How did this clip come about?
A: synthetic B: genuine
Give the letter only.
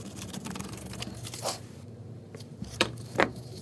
A